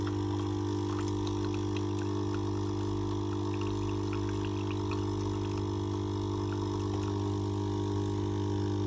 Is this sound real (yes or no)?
yes